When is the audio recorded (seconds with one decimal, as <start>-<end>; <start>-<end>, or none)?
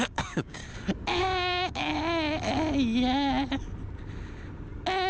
0.6-1.2; 1.9-5.1